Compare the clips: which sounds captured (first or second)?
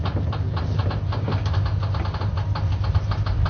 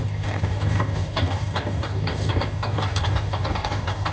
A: first